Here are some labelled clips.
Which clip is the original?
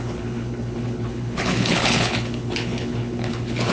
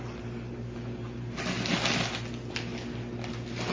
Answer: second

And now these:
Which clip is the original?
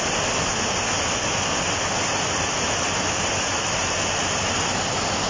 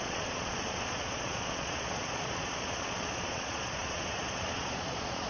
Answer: first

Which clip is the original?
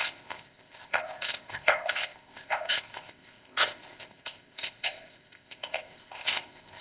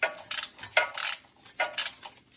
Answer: second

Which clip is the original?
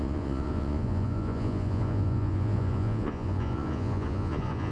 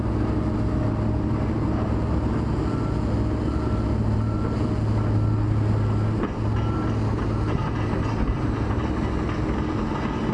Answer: second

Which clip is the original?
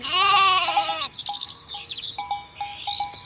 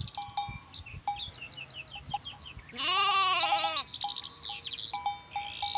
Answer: second